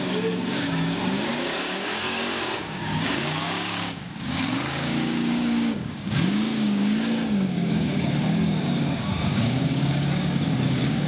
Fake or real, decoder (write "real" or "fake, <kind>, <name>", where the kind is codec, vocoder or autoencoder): fake, codec, DAC